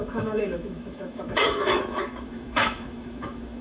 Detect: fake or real fake